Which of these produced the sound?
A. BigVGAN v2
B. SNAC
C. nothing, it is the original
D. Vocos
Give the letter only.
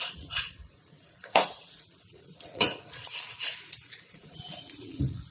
D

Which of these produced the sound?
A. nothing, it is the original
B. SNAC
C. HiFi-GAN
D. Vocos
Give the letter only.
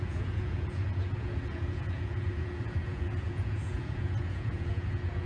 D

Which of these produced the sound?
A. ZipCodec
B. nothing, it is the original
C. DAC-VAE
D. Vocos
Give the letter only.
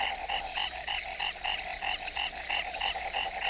B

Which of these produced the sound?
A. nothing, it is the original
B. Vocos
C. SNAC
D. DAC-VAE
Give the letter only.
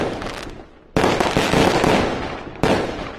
A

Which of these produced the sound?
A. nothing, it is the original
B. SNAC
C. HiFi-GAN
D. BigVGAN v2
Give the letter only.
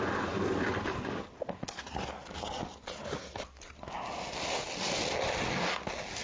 A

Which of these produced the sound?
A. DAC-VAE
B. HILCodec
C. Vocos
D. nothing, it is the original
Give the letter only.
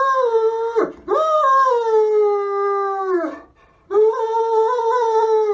D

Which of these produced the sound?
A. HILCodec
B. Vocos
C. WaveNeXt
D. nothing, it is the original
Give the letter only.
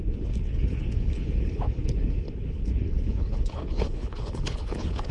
A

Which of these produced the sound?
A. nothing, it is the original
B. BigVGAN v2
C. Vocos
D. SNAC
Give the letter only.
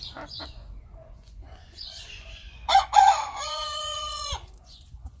C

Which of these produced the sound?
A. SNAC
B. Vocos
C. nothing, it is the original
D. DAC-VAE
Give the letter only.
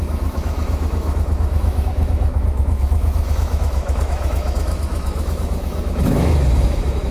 D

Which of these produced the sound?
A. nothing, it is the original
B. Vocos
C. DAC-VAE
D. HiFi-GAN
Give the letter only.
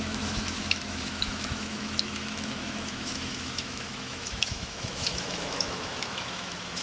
C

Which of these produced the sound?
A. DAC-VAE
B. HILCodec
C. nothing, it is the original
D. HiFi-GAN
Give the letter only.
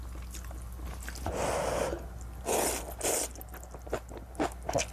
C